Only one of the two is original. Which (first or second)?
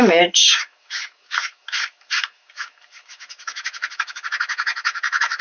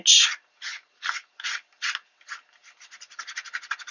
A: second